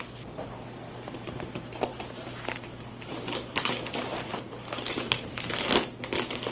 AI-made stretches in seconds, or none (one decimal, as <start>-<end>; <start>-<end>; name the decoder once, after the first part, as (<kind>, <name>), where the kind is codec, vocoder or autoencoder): 1.9-5.8 (vocoder, BigVGAN v2)